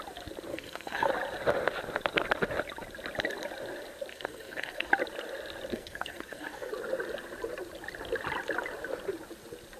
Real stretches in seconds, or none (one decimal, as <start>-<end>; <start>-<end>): 0.0-0.5; 1.1-4.1; 4.9-5.7; 6.7-9.8

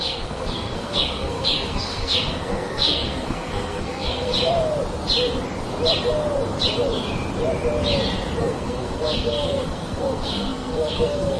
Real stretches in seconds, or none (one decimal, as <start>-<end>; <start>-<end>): 4.3-8.4

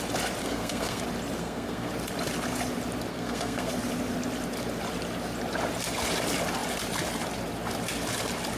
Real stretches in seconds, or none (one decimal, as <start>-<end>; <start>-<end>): 0.0-0.4; 1.0-1.4; 1.9-3.1; 3.7-8.6

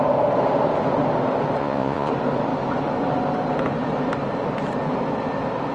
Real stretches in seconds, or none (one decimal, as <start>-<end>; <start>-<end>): 0.0-1.6; 2.1-5.7

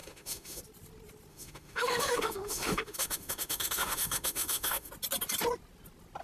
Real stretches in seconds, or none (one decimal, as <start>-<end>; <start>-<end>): 0.6-1.3; 4.9-6.2

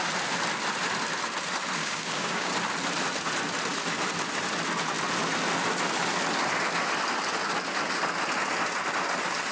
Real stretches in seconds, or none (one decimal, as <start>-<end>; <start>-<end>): 0.0-1.8; 2.5-9.5

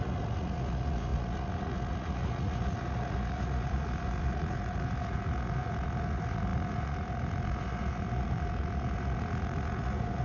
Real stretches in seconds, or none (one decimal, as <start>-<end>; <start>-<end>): none